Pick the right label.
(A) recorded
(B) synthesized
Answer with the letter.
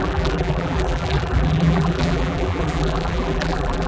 B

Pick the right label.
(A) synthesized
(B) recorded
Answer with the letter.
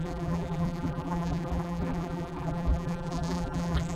A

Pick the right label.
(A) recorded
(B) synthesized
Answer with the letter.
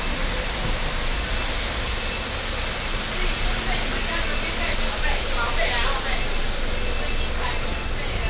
A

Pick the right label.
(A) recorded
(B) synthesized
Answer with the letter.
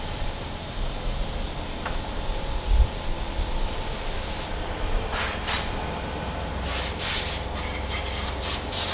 A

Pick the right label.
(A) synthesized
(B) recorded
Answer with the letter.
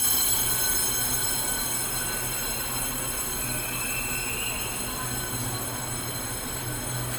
B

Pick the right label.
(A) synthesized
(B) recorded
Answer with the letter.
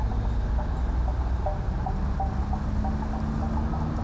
B